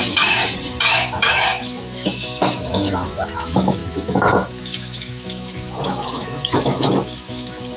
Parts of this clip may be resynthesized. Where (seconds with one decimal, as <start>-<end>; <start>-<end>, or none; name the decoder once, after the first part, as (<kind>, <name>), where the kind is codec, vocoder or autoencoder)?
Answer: 0.0-0.4 (autoencoder, DAC-VAE); 0.9-7.8